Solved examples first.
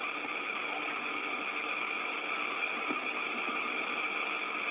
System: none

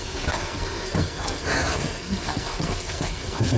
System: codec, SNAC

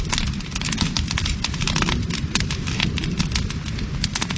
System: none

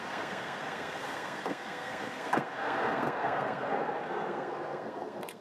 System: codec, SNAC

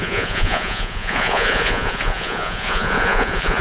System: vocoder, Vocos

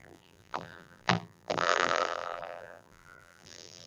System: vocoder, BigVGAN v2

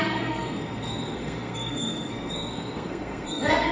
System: codec, SNAC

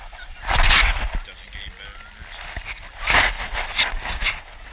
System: none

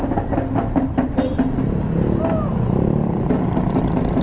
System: none